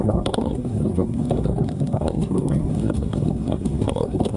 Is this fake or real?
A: fake